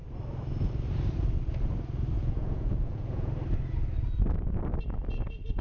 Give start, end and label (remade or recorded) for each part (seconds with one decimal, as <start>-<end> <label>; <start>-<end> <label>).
0.0-2.2 recorded; 2.2-3.3 remade; 3.3-5.6 recorded